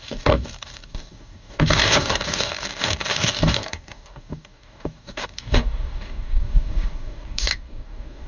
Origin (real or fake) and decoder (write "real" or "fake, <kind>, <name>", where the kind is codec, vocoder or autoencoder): fake, codec, DAC